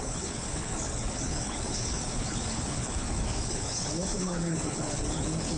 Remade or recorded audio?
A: remade